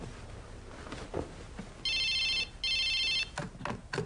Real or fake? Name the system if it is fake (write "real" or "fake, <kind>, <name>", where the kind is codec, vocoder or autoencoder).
real